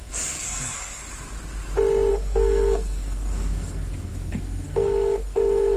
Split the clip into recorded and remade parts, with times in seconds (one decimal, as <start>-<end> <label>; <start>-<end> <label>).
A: 0.0-1.0 remade; 1.0-2.1 recorded; 2.1-5.8 remade